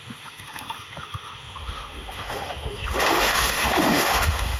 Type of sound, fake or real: fake